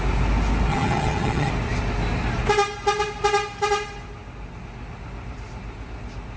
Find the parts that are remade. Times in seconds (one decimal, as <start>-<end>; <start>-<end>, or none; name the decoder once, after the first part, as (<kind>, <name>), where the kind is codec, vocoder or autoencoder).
0.7-1.5 (vocoder, HiFi-GAN)